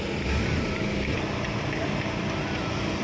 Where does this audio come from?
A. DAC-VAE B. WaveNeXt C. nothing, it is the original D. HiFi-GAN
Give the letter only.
C